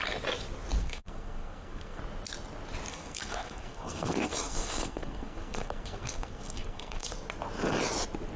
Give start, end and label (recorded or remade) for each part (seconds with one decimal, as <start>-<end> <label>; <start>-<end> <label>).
0.0-0.8 recorded; 0.8-2.0 remade; 2.0-2.9 recorded; 2.9-7.1 remade; 7.1-8.4 recorded